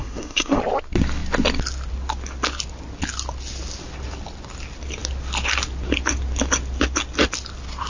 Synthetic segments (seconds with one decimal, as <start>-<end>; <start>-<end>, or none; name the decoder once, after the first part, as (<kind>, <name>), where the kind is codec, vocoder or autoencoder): 0.0-0.6 (codec, SNAC)